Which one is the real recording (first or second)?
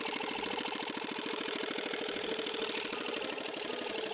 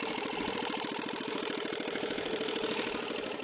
first